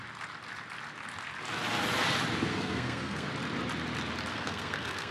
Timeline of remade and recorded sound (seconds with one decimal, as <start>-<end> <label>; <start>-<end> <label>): 0.0-2.5 recorded; 2.5-3.3 remade; 3.3-4.3 recorded; 4.3-5.1 remade